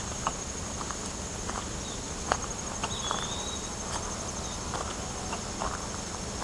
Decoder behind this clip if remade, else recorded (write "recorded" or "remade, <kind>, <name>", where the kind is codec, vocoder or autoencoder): recorded